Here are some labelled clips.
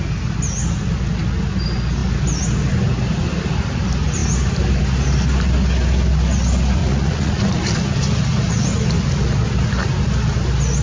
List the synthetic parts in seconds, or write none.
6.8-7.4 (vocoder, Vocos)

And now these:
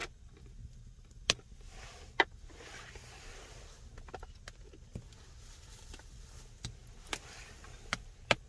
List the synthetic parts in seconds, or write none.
none

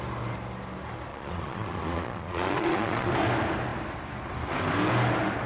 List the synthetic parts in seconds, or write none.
1.1-3.1 (vocoder, Vocos)

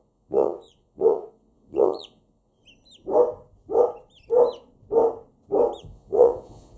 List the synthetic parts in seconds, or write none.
0.0-2.6 (vocoder, Vocos); 5.8-6.8

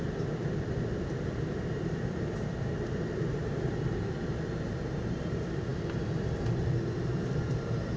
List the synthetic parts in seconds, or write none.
0.0-8.0 (vocoder, BigVGAN v2)

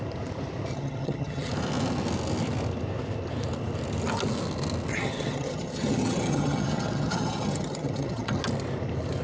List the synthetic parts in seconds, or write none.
0.7-1.5 (vocoder, HiFi-GAN); 4.9-8.4

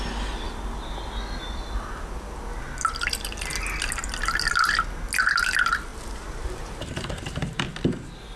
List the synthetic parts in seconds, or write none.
5.9-7.6 (vocoder, BigVGAN v2)